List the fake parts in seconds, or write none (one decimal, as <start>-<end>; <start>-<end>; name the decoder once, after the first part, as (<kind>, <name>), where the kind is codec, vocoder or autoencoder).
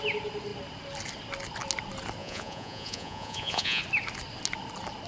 2.2-3.8 (vocoder, Vocos)